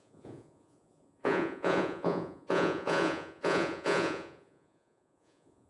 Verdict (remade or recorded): remade